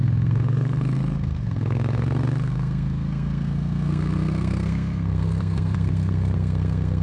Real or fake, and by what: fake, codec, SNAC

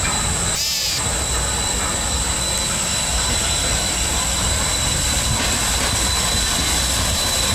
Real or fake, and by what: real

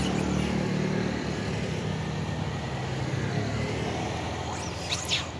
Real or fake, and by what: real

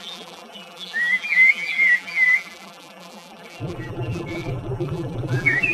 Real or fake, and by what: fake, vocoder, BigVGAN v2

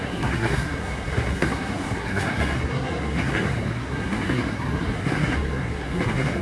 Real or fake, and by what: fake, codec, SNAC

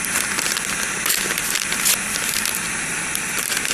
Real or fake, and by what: real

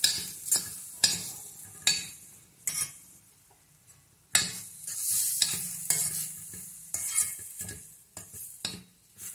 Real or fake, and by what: real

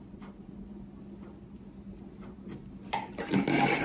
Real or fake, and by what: real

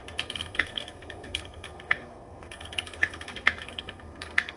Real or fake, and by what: fake, codec, SNAC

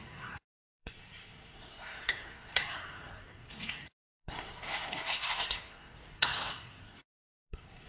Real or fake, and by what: fake, codec, SNAC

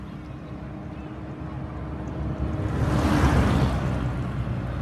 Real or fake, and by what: real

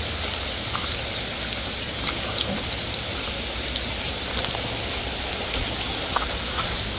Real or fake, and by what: real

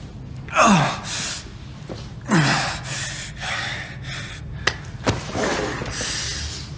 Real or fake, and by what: real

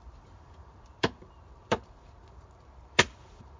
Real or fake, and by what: fake, vocoder, BigVGAN v2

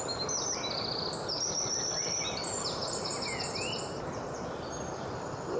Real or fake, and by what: real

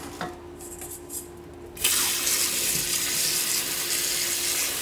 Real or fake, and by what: real